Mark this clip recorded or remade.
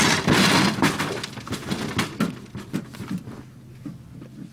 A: recorded